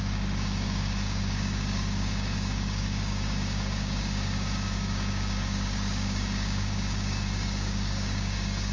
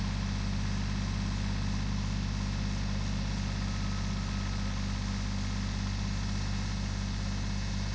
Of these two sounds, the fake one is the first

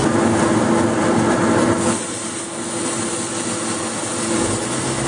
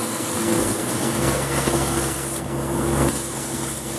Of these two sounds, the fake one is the second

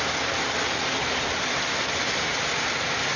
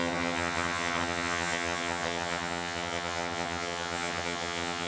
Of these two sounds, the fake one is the second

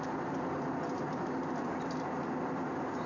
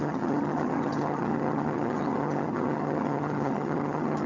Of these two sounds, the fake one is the second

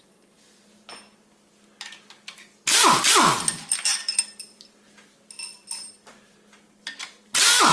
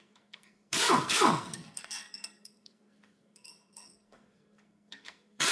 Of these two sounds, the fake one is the second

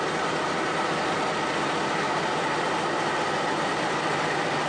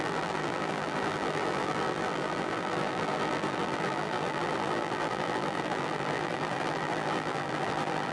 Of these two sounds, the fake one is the second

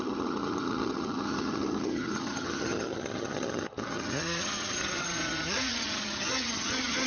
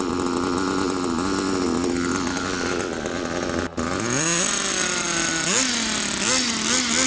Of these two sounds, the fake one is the first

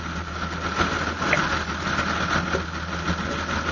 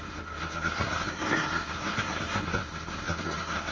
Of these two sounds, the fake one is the second